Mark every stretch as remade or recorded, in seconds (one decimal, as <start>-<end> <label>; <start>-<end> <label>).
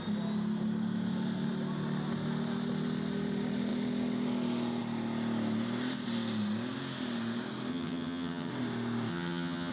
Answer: 0.0-7.7 recorded; 7.7-8.5 remade; 8.5-9.1 recorded; 9.1-9.7 remade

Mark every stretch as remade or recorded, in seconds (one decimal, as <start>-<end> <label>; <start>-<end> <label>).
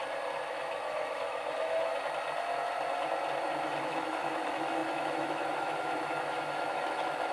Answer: 0.0-0.5 recorded; 0.5-1.9 remade; 1.9-3.8 recorded; 3.8-7.3 remade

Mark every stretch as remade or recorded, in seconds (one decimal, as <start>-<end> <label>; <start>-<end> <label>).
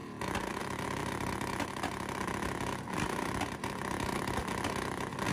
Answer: 0.0-0.6 remade; 0.6-1.0 recorded; 1.0-4.2 remade; 4.2-5.3 recorded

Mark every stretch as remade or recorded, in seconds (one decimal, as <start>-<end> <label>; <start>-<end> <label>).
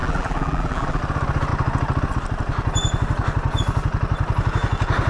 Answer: 0.0-1.0 remade; 1.0-5.1 recorded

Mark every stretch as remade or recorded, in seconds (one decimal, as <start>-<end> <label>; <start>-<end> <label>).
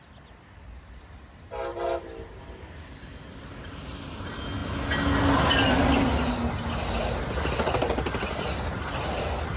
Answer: 0.0-9.6 recorded